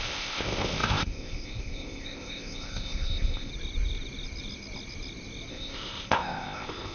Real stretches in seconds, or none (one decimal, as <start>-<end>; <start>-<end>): 3.5-5.5

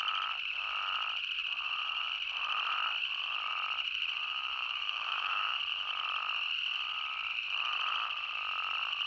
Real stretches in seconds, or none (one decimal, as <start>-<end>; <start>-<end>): 0.0-4.3; 5.6-9.1

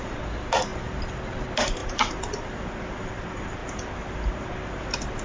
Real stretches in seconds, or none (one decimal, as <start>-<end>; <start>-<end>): 0.0-5.2

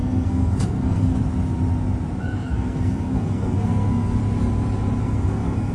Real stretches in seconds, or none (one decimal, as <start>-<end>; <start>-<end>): 1.1-2.2; 4.2-5.0